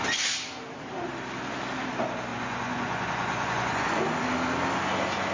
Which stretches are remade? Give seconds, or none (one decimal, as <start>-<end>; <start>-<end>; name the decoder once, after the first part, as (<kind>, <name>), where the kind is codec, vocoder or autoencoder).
2.3-4.0 (vocoder, Vocos)